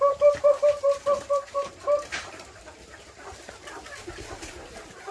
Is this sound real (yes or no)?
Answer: no